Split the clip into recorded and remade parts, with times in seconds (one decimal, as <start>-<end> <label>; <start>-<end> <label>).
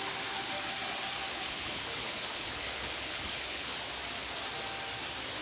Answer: 0.0-1.3 recorded; 1.3-3.7 remade; 3.7-5.4 recorded